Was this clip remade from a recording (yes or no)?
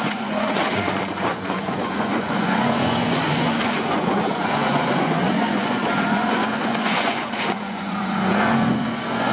yes